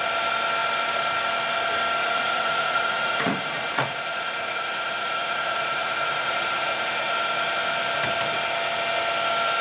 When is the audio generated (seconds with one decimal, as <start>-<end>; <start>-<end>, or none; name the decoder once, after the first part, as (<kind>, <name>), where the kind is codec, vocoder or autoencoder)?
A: 2.0-7.1 (vocoder, Vocos)

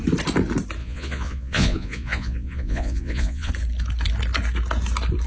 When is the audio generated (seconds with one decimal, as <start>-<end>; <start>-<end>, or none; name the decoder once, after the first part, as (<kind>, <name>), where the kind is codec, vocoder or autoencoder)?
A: 0.8-3.5 (vocoder, Vocos)

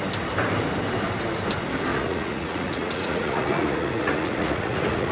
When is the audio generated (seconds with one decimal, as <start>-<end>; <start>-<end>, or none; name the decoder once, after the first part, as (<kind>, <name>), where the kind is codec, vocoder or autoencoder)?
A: 1.9-5.1 (vocoder, Vocos)

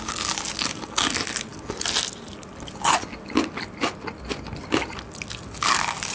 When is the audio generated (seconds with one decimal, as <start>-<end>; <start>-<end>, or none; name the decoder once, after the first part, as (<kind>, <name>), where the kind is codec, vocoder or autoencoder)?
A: none

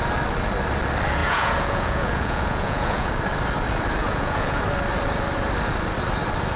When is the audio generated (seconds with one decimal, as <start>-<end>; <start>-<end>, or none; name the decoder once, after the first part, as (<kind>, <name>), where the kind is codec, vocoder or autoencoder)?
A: 1.2-3.1 (vocoder, Vocos); 4.0-4.6

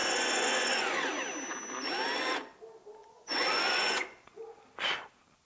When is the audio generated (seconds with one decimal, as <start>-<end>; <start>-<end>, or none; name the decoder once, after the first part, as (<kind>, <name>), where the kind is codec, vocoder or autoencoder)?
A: 0.0-1.1 (vocoder, Vocos); 3.0-4.3

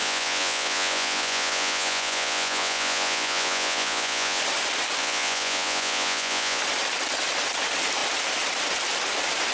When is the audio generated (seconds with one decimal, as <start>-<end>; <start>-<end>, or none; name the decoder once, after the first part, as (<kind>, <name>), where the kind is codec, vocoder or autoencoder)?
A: 0.0-4.4 (vocoder, Vocos); 5.0-6.6

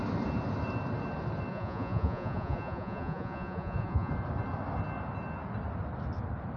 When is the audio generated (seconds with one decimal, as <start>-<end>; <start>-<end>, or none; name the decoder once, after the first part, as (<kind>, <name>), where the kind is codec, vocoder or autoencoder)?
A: 1.5-4.1 (vocoder, Vocos)